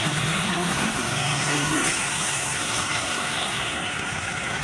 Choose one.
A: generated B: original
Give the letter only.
A